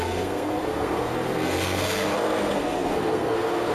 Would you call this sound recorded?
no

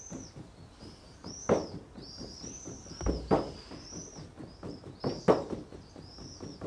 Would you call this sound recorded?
yes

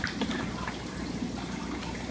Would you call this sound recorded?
yes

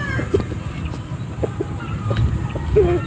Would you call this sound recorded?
yes